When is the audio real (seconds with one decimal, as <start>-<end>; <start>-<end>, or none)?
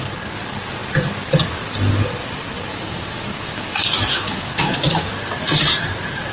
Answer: 0.0-2.7; 5.1-6.3